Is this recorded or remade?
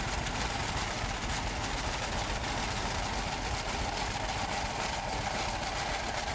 recorded